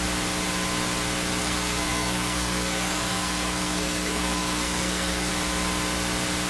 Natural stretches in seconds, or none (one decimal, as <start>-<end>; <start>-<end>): 0.0-1.4; 5.3-6.5